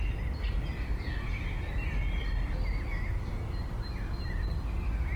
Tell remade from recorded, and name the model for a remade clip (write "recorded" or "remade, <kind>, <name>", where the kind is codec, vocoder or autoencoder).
recorded